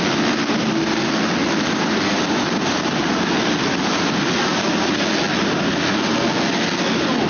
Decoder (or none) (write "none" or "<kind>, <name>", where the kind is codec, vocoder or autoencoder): none